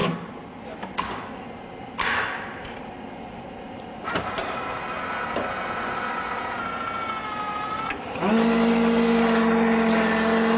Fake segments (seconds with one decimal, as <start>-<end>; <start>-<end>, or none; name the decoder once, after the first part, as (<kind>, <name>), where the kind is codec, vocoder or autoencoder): none